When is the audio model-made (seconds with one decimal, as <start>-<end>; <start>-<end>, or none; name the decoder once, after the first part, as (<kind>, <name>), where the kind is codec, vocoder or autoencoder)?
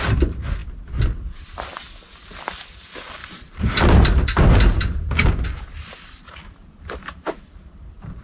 3.2-8.2 (vocoder, BigVGAN v2)